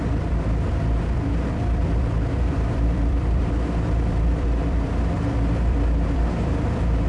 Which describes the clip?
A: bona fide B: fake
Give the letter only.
B